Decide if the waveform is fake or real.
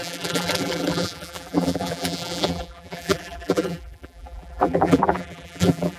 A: fake